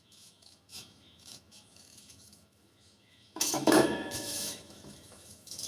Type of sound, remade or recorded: remade